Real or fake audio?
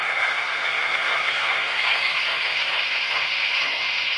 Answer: fake